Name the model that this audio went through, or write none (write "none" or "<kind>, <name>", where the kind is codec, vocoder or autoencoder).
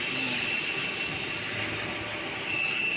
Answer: none